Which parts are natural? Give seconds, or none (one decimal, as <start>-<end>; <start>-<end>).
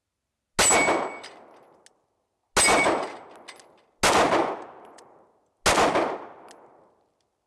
0.0-4.4; 5.0-7.5